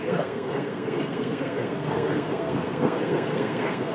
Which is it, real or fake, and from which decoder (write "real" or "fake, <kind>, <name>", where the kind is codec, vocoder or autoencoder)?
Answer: fake, codec, SNAC